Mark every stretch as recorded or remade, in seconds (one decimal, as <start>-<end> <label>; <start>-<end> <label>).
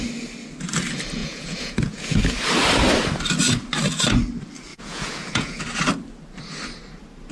0.0-1.2 recorded; 1.2-2.2 remade; 2.2-4.7 recorded; 4.7-5.6 remade; 5.6-7.3 recorded